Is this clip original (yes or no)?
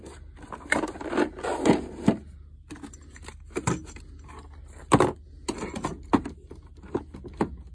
yes